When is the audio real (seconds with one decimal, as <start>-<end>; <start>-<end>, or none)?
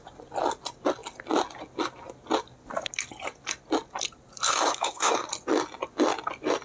0.0-4.5; 5.3-6.6